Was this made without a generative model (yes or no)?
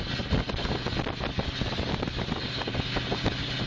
yes